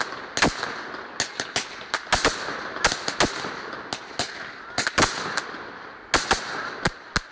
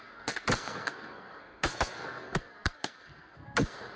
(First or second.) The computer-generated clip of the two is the second